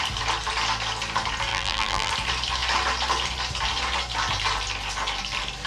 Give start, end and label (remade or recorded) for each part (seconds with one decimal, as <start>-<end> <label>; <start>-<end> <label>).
0.0-1.5 recorded; 1.5-2.1 remade; 2.1-5.7 recorded